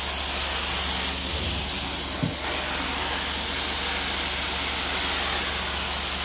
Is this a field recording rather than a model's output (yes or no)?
yes